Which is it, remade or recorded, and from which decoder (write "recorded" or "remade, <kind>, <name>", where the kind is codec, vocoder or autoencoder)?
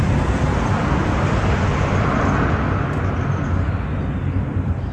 recorded